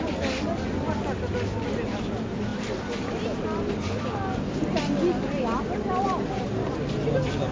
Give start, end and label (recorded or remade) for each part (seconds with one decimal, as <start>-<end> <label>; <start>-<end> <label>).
0.0-7.5 recorded